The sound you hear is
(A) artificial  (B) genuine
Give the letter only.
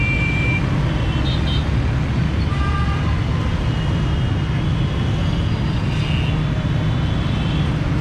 B